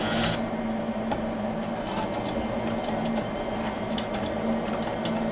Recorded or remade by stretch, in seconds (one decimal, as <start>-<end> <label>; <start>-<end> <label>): 0.0-5.3 recorded